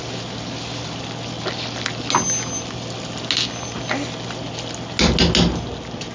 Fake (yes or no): no